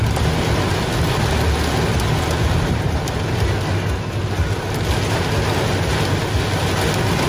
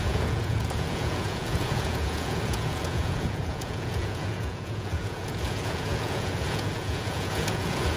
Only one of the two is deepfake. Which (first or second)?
second